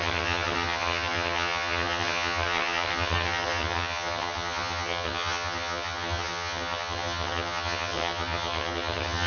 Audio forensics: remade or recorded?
remade